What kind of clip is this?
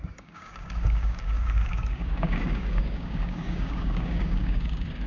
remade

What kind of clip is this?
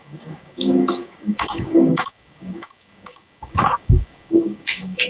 remade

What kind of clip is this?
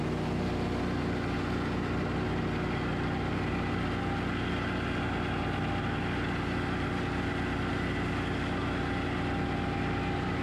recorded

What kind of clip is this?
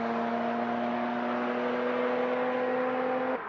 recorded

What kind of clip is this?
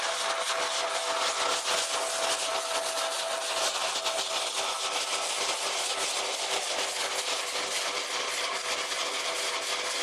recorded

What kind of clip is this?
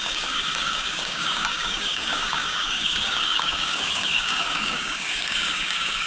remade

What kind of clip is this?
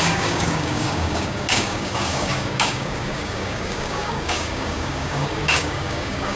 remade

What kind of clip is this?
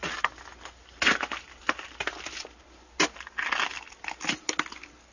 recorded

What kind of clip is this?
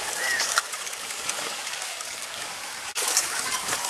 remade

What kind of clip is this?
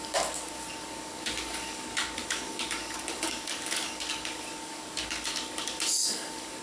remade